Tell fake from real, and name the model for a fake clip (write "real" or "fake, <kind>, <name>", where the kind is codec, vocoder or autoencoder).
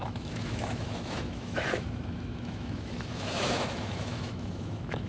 fake, autoencoder, DAC-VAE